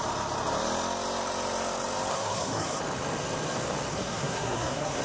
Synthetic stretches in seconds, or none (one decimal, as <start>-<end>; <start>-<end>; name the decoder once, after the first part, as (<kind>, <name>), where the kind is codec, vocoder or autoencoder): 2.1-2.8 (codec, SNAC); 3.9-5.0